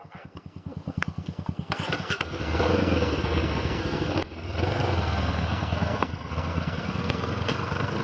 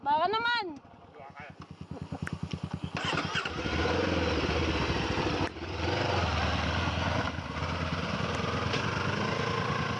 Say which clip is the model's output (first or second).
first